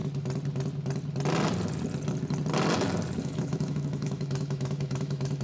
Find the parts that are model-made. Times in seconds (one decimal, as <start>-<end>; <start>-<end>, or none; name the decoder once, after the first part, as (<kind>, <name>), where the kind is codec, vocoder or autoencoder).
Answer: 3.2-5.4 (autoencoder, DAC-VAE)

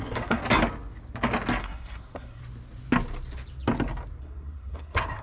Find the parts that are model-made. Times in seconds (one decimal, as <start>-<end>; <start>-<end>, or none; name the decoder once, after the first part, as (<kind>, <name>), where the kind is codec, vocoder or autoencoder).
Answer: 0.0-0.4 (codec, SNAC); 1.6-2.4; 4.2-5.2

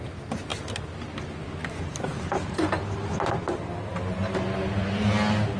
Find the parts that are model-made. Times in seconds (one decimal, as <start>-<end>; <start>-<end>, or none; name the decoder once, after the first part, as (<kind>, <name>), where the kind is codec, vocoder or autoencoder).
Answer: none

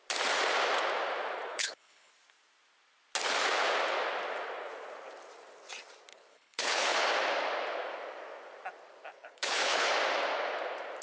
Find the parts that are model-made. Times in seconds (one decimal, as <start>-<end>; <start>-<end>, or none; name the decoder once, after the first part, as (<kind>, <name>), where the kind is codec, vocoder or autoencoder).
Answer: 1.5-2.1 (codec, HILCodec); 6.1-7.0; 9.1-9.9

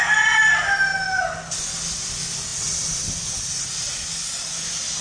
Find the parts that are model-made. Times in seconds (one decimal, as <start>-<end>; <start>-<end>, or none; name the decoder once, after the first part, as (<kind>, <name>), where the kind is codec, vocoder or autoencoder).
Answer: none

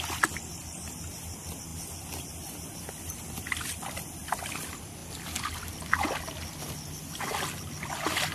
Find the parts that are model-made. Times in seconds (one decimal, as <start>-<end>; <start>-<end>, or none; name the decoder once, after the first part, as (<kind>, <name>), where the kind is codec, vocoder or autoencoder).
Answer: none

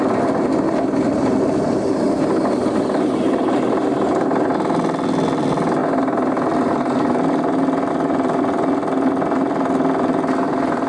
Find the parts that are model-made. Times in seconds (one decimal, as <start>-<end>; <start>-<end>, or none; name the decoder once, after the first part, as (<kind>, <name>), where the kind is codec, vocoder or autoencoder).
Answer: none

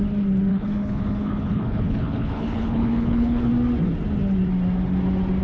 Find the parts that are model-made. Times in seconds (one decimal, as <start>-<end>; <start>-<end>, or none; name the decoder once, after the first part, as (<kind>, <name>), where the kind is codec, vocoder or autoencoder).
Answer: 0.5-3.5 (codec, HILCodec)